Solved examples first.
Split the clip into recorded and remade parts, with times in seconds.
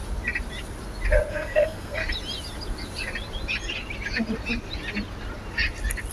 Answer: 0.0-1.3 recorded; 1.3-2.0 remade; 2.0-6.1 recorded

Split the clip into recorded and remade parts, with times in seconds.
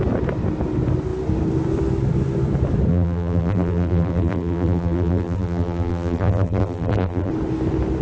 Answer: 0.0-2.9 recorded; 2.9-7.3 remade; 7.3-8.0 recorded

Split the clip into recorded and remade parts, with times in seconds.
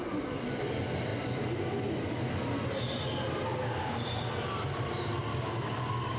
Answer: 0.0-3.5 recorded; 3.5-4.2 remade; 4.2-5.3 recorded; 5.3-6.2 remade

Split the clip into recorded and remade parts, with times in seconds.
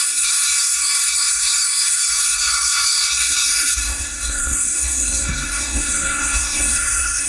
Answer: 0.0-7.3 remade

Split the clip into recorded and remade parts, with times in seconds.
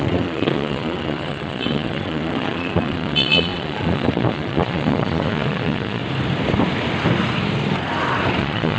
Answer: 0.0-6.0 remade; 6.0-8.4 recorded; 8.4-8.8 remade